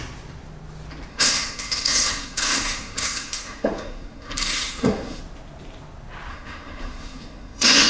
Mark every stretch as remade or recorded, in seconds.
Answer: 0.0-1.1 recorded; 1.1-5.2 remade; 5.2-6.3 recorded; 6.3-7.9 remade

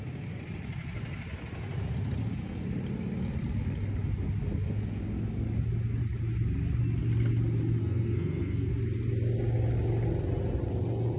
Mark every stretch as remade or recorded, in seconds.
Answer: 0.0-7.8 recorded; 7.8-8.7 remade; 8.7-11.2 recorded

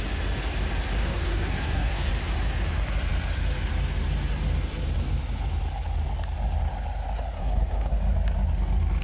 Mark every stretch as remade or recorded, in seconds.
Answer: 0.0-1.0 recorded; 1.0-2.1 remade; 2.1-7.4 recorded; 7.4-7.9 remade; 7.9-9.0 recorded

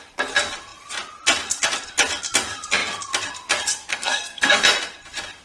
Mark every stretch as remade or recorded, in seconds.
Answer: 0.0-3.9 recorded; 3.9-4.6 remade; 4.6-5.4 recorded

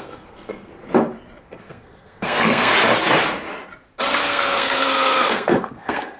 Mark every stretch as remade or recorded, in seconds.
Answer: 0.0-0.7 remade; 0.7-1.4 recorded; 1.4-2.7 remade; 2.7-4.2 recorded; 4.2-6.2 remade

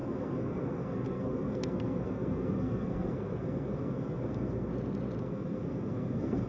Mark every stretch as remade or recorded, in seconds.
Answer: 0.0-4.7 remade; 4.7-5.2 recorded; 5.2-6.5 remade